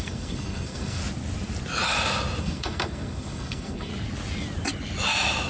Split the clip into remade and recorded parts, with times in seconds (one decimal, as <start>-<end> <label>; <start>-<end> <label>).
0.0-1.0 remade; 1.0-2.4 recorded; 2.4-3.9 remade; 3.9-5.5 recorded